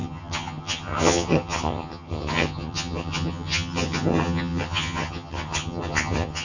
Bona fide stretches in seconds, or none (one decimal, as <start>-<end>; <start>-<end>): none